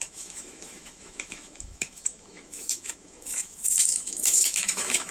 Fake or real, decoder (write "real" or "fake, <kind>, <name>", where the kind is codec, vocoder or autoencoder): fake, autoencoder, DAC-VAE